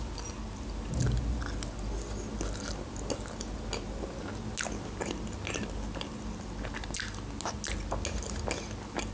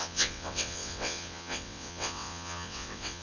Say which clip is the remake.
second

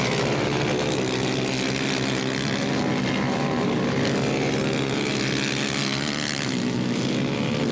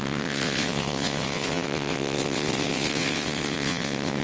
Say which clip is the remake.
second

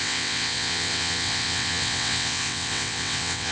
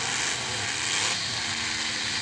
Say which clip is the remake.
first